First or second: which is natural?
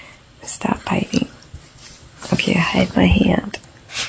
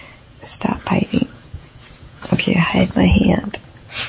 first